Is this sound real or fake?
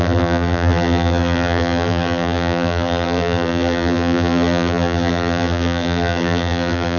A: fake